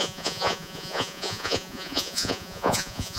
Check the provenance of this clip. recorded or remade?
remade